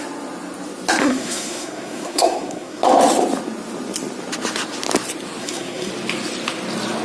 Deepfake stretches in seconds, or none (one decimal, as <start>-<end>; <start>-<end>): 1.0-2.8; 5.4-5.9